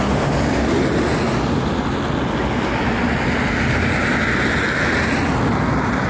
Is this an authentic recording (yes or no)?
yes